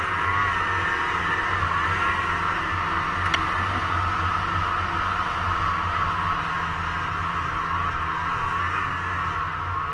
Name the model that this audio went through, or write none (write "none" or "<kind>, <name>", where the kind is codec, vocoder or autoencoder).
none